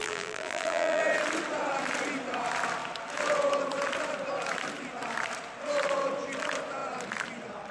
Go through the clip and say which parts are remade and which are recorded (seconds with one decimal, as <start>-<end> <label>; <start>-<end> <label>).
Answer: 0.0-1.0 remade; 1.0-7.7 recorded